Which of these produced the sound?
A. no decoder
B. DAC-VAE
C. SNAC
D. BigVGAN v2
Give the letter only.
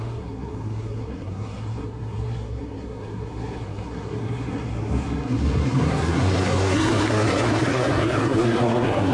C